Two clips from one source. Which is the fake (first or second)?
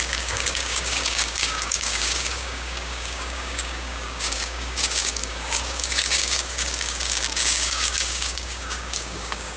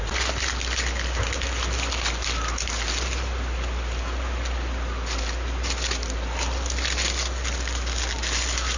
first